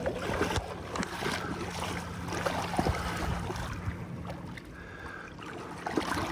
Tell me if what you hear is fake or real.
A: real